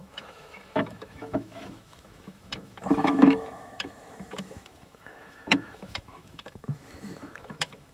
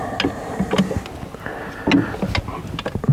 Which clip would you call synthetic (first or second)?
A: first